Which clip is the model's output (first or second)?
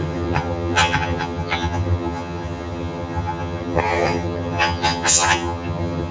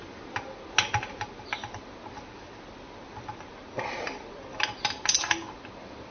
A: first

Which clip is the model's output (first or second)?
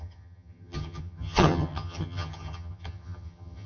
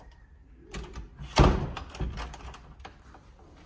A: first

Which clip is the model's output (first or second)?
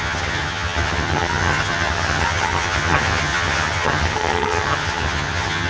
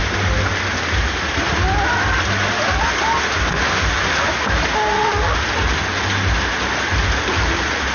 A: first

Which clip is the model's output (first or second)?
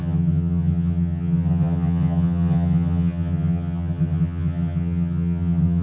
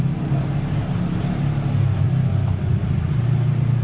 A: first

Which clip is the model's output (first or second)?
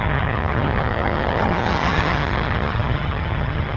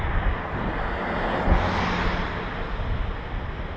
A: first